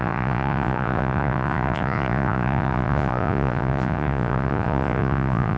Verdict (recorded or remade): remade